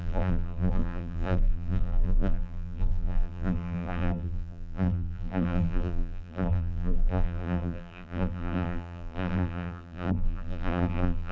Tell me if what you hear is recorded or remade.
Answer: remade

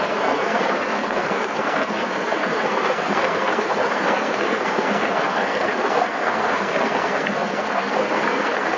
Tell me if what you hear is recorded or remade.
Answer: remade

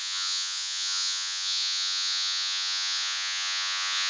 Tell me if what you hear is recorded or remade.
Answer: remade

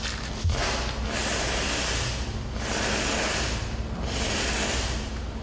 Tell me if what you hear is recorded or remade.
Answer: recorded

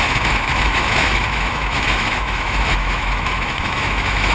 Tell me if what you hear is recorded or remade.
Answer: remade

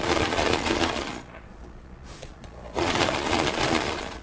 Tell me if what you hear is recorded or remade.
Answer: remade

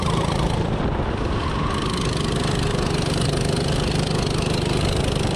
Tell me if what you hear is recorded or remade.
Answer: recorded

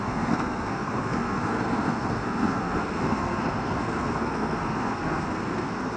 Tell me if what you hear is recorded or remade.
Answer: remade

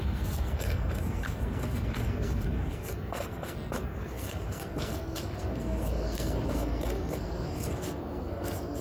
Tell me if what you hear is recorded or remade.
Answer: remade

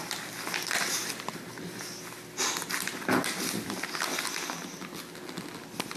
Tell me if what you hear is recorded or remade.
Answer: recorded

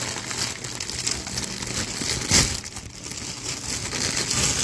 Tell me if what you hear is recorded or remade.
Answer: recorded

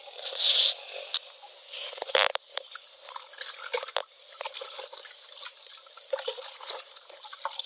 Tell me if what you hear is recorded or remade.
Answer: recorded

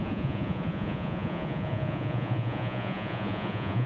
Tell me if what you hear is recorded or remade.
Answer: remade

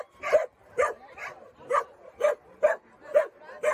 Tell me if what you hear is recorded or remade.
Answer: remade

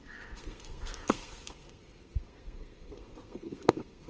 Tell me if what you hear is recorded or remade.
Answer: remade